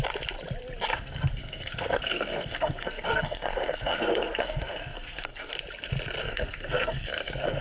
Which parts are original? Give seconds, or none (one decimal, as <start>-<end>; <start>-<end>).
0.0-0.9; 5.5-6.2